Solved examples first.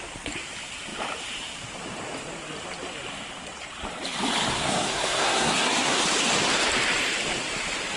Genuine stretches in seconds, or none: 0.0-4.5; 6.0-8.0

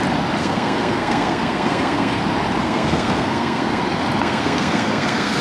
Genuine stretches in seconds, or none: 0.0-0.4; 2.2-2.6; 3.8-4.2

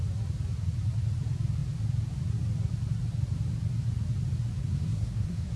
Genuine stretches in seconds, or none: 0.0-4.6

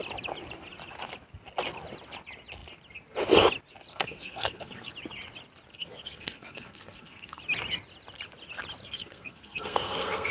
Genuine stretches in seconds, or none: 0.0-3.9; 4.9-5.7; 7.4-8.8

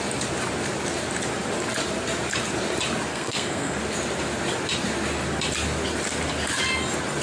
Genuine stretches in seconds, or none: 0.0-3.1; 3.8-7.2

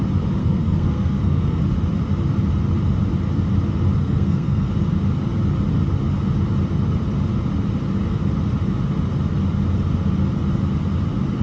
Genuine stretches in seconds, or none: 0.0-0.4; 1.6-4.0; 4.7-11.4

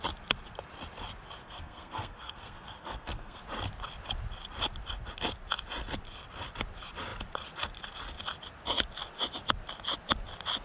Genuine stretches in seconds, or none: 0.0-1.4; 3.4-10.6

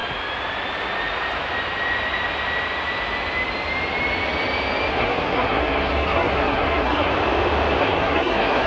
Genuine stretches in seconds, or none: 0.0-4.9; 7.1-7.8